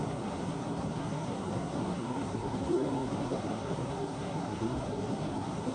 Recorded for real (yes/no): no